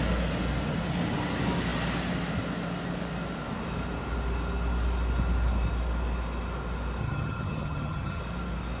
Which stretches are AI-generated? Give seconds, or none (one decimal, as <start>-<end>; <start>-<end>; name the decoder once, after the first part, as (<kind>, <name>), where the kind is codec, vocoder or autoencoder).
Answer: 7.0-8.2 (vocoder, HiFi-GAN)